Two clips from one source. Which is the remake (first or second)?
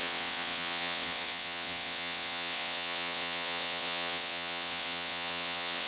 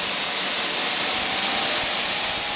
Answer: first